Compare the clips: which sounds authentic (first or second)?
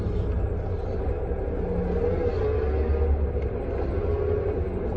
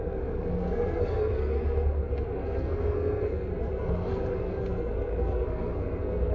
first